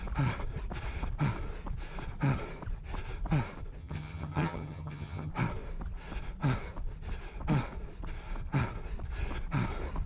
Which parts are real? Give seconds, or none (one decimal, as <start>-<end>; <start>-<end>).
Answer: 0.0-3.8; 5.3-10.1